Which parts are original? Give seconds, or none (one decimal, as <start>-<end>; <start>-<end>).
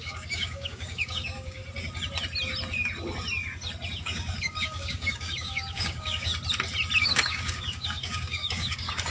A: 1.6-4.0; 6.3-7.0